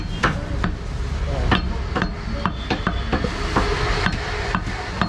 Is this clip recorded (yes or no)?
yes